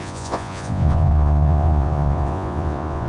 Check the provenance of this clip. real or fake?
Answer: fake